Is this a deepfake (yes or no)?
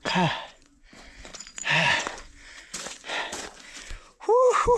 yes